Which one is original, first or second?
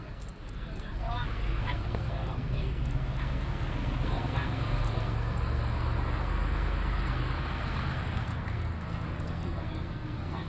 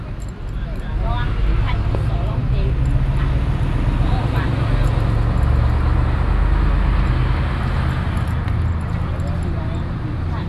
second